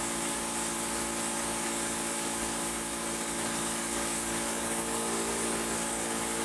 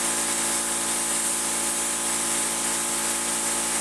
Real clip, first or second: second